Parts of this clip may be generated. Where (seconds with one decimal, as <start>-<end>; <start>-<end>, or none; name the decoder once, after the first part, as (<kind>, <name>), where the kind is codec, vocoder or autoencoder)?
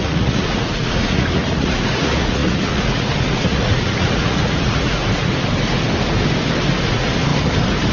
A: 0.0-5.0 (vocoder, Vocos); 6.8-7.3